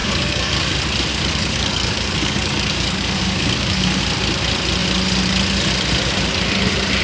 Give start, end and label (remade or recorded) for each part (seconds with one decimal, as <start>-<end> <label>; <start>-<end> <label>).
0.0-0.7 remade; 0.7-1.1 recorded; 1.1-4.0 remade; 4.0-7.0 recorded